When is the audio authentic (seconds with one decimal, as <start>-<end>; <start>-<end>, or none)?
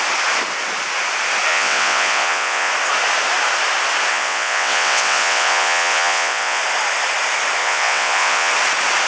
0.0-1.5; 2.7-4.1; 6.6-7.6; 8.5-9.1